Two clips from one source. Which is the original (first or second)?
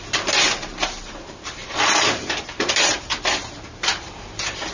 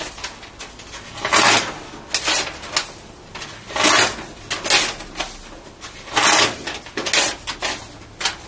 second